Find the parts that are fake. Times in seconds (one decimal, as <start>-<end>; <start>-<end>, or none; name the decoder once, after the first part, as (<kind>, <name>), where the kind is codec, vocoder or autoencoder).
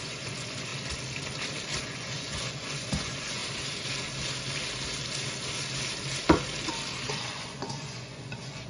0.0-0.7 (vocoder, Vocos); 1.8-3.4; 7.0-8.7